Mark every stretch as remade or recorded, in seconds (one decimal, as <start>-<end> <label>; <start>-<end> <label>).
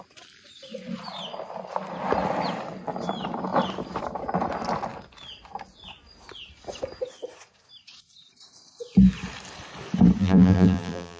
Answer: 0.0-10.2 recorded; 10.2-11.2 remade